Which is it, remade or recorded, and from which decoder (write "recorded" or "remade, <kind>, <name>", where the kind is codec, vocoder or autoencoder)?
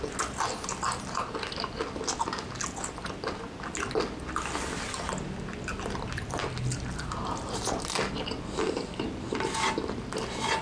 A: recorded